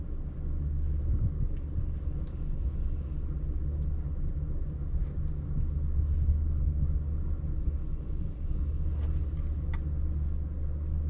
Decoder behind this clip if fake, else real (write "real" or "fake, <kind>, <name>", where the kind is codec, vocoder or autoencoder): real